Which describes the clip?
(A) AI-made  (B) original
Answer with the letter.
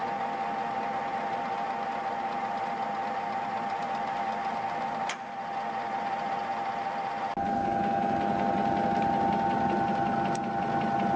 B